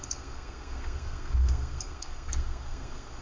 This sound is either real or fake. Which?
fake